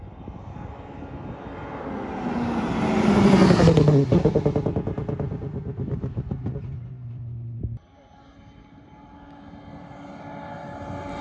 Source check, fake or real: real